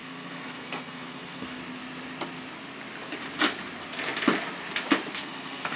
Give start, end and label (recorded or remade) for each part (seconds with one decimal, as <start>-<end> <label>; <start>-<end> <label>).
0.0-1.6 remade; 1.6-5.1 recorded; 5.1-5.8 remade